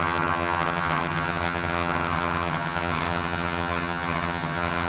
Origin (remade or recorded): remade